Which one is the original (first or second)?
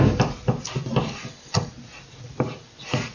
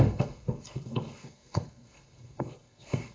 first